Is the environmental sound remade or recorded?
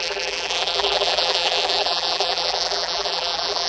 remade